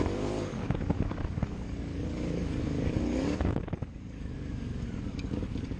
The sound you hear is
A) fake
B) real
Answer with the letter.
A